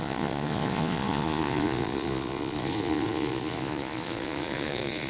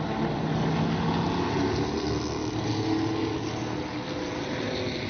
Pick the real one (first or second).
second